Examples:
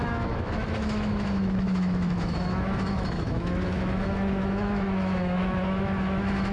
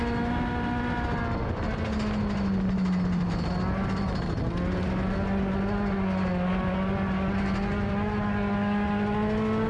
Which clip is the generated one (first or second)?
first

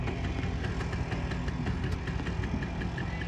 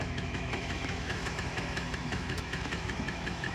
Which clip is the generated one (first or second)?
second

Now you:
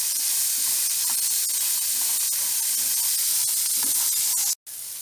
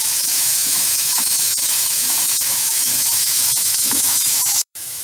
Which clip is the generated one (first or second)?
second